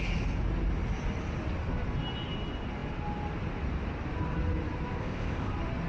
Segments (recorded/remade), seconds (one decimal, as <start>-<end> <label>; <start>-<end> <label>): 0.0-5.0 recorded; 5.0-5.5 remade; 5.5-5.9 recorded